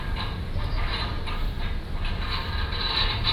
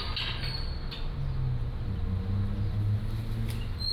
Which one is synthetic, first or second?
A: first